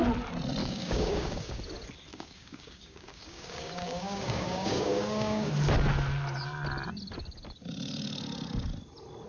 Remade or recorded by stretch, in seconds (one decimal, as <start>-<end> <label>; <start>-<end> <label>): 0.0-0.6 recorded; 0.6-1.6 remade; 1.6-2.1 recorded; 2.1-5.5 remade; 5.5-9.3 recorded